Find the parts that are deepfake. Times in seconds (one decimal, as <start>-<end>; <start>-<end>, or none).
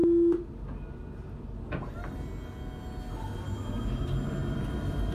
none